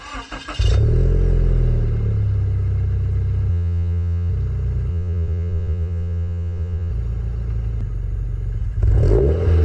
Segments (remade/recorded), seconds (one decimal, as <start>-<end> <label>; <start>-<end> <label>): 0.0-3.5 recorded; 3.5-4.3 remade; 4.3-4.9 recorded; 4.9-6.9 remade; 6.9-9.6 recorded